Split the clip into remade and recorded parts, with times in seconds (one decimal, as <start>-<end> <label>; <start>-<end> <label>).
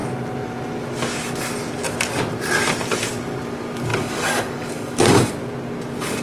0.0-3.9 recorded; 3.9-5.3 remade; 5.3-6.2 recorded